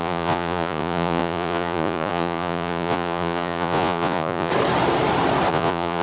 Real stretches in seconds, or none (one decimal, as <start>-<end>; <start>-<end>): 4.5-5.5